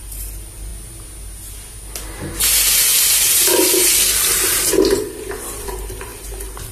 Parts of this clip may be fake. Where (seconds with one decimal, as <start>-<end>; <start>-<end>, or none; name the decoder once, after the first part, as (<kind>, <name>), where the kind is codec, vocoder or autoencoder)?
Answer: 0.0-0.7 (vocoder, BigVGAN v2); 4.7-6.7